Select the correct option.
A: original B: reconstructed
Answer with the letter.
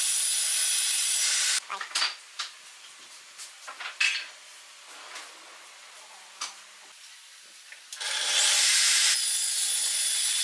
A